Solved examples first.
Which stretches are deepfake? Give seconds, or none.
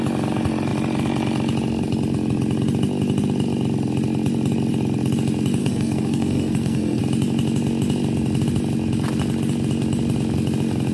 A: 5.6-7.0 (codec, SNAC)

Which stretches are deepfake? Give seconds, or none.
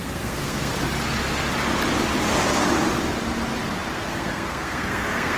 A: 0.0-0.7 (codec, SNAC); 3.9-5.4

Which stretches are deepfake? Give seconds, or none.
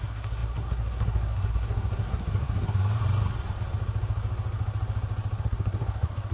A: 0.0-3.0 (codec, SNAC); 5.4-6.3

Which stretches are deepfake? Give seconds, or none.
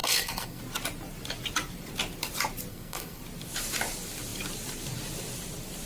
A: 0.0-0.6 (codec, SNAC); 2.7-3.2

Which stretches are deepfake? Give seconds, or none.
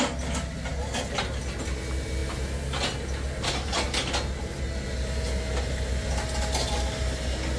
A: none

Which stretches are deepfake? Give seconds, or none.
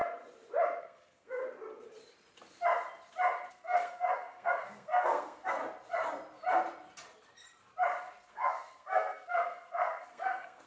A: 0.8-1.4 (codec, SNAC); 3.5-5.6; 8.3-10.7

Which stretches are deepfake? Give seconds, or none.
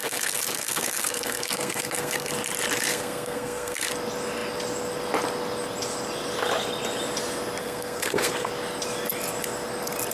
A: 0.0-2.3 (codec, SNAC); 2.9-3.9; 7.6-8.5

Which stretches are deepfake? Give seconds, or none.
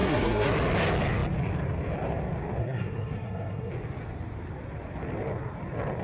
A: 0.0-0.5 (codec, SNAC); 2.6-3.7